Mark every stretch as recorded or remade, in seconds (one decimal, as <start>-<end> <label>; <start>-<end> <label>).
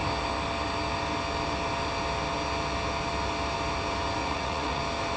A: 0.0-4.2 recorded; 4.2-4.8 remade; 4.8-5.2 recorded